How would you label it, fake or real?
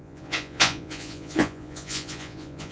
fake